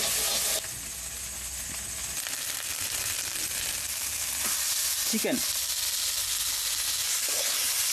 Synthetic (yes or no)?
no